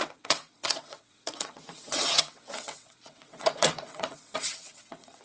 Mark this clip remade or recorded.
remade